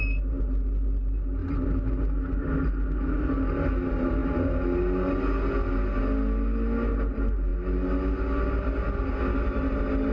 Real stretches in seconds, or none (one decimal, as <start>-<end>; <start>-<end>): 0.0-10.1